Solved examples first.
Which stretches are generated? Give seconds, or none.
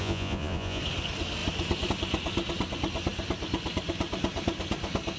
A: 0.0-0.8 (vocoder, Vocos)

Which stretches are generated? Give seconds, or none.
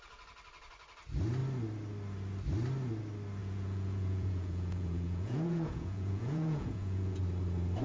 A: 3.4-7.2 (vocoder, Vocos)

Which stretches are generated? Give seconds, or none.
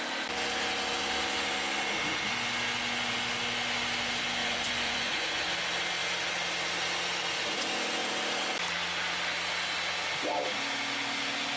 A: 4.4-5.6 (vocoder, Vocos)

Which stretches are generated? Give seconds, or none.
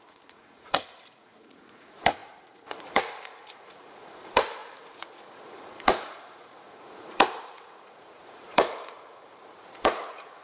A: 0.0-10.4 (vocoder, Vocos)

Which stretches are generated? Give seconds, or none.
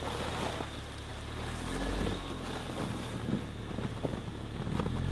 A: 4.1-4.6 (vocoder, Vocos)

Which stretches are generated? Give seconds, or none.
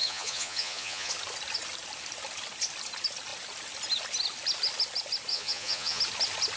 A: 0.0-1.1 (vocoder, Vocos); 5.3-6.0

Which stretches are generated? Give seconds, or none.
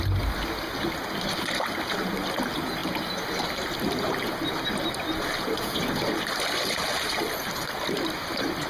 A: none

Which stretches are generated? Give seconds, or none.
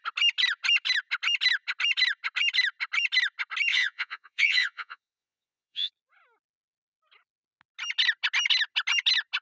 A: 3.7-5.9 (vocoder, Vocos)